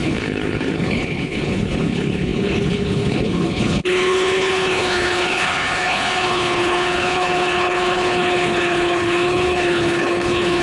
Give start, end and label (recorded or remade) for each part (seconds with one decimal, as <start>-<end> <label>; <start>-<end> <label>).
0.0-10.6 remade